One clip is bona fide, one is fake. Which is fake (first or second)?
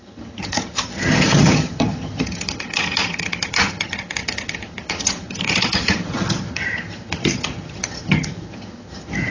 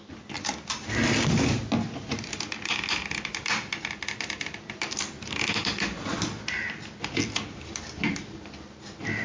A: first